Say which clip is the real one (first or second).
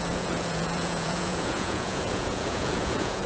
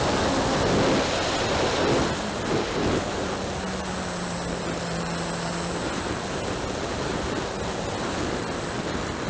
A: second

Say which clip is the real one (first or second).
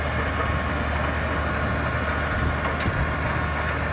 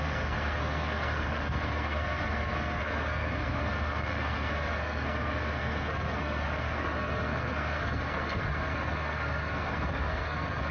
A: first